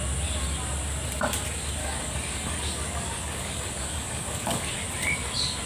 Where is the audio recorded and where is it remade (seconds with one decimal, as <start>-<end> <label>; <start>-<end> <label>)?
0.0-1.8 recorded; 1.8-4.7 remade; 4.7-5.7 recorded